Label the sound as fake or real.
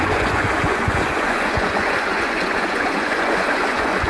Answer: fake